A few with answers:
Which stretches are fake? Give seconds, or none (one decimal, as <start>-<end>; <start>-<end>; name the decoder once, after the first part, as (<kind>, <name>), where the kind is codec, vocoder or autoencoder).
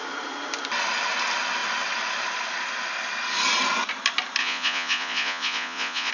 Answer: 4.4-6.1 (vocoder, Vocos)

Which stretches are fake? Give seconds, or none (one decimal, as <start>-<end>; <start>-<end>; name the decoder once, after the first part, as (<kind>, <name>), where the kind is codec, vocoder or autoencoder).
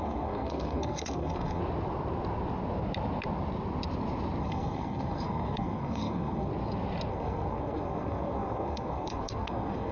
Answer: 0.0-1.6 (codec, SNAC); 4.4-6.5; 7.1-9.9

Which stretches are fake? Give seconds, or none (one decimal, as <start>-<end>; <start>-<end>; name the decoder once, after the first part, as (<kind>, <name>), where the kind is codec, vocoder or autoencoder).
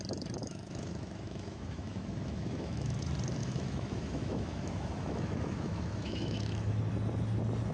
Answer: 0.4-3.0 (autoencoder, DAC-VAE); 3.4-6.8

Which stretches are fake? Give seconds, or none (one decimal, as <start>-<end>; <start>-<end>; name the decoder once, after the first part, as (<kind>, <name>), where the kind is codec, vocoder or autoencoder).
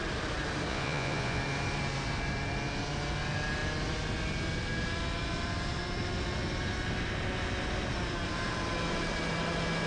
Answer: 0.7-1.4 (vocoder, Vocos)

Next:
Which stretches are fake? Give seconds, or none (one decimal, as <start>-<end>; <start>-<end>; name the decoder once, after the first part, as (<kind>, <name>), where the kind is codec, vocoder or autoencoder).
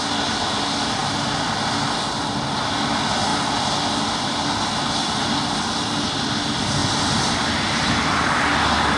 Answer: none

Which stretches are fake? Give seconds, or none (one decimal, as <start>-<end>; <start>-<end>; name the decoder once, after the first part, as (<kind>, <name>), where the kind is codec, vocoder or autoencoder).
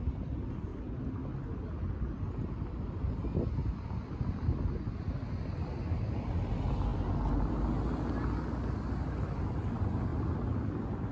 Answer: none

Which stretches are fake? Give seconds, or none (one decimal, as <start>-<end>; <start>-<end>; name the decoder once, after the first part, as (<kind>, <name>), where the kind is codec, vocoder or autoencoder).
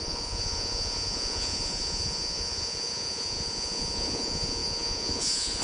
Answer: 0.0-5.6 (vocoder, Vocos)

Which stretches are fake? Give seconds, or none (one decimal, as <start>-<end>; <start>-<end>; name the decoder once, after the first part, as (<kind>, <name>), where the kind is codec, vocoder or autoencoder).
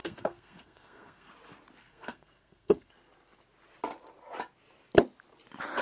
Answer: 0.0-1.3 (codec, SNAC); 1.8-2.9